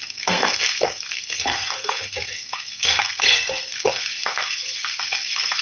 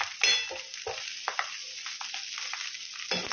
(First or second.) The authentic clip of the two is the second